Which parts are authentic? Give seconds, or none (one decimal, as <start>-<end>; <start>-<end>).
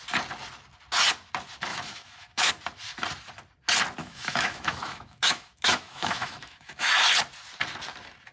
0.0-1.7; 2.5-4.0; 6.9-8.3